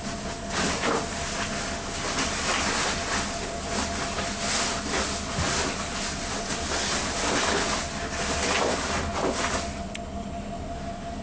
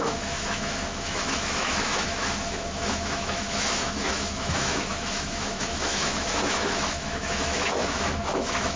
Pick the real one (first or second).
first